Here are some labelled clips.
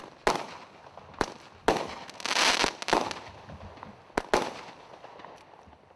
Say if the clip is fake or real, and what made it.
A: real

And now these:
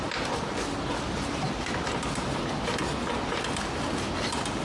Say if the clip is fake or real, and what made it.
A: real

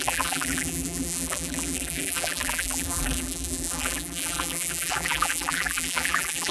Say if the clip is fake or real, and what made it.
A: fake, vocoder, BigVGAN v2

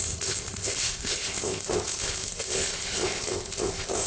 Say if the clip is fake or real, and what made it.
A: fake, codec, ZipCodec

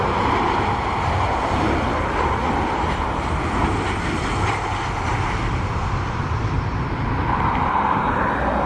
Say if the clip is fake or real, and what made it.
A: real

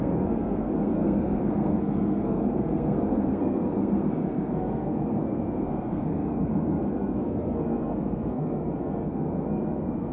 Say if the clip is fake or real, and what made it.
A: fake, codec, SNAC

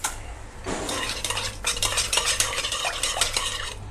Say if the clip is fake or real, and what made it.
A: real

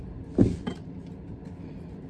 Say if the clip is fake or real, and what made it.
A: real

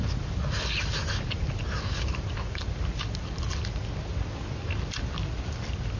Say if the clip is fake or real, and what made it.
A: real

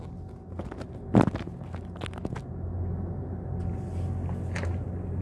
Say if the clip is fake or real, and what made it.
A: real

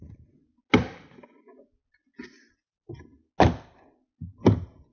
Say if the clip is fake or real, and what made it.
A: real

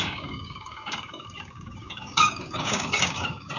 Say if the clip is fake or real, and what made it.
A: fake, codec, DAC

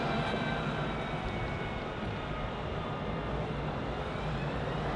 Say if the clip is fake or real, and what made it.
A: real